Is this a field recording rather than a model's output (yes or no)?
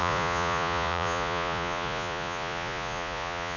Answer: no